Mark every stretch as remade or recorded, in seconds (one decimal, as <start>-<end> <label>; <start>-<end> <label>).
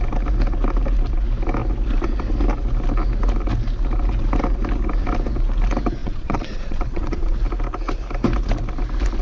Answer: 0.0-6.0 recorded; 6.0-7.4 remade; 7.4-9.2 recorded